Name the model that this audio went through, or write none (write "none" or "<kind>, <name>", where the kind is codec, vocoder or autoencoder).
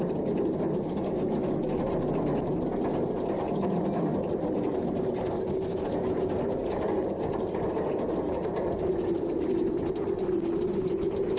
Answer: none